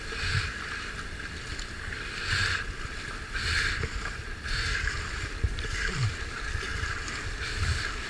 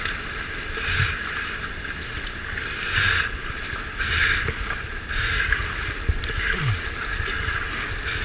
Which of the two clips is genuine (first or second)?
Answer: second